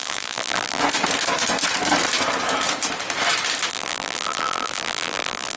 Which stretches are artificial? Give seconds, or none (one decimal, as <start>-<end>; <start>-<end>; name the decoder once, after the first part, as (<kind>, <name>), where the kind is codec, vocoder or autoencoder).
0.0-0.8 (vocoder, BigVGAN v2); 3.7-5.6